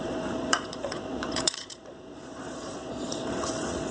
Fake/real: fake